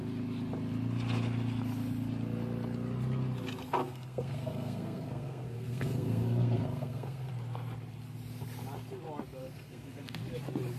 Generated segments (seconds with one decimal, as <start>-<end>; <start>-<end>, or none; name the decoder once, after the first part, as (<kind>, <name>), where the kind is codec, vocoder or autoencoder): 3.8-7.3 (codec, SNAC); 9.4-10.2